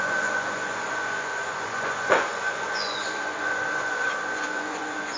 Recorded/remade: remade